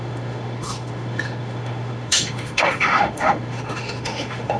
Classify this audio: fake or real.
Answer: fake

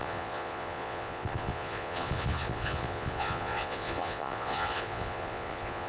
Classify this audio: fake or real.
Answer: fake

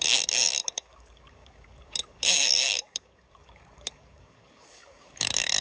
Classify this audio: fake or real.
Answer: fake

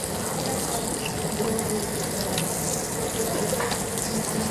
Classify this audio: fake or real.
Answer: real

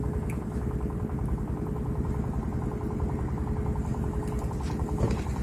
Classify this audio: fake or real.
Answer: real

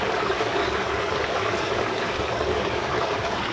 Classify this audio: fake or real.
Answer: fake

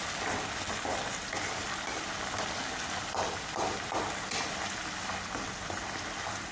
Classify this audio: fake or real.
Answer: real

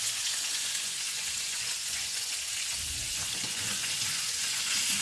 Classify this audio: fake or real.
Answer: fake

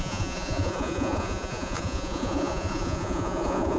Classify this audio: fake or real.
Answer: fake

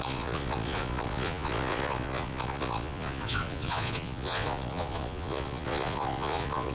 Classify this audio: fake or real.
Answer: fake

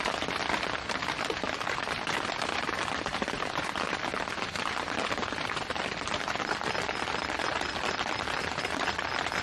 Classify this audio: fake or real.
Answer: real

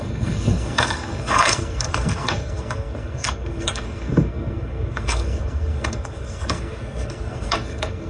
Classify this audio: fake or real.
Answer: fake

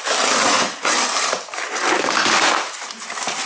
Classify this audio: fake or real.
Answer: fake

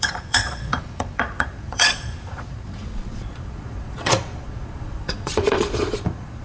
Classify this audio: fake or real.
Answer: fake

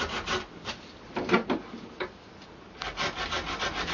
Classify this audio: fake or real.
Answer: real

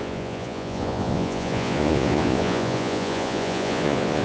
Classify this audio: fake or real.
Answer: fake